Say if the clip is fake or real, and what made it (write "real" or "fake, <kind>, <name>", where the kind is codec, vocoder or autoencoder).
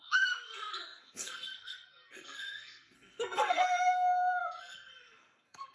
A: fake, codec, SNAC